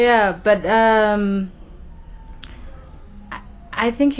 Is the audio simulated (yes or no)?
no